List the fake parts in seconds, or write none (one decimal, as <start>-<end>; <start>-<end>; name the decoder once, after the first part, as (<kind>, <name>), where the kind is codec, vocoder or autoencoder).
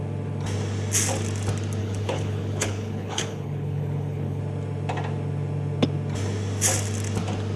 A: 1.8-4.4 (codec, HILCodec)